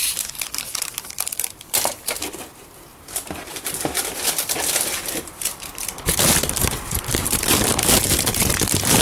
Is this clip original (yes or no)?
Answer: no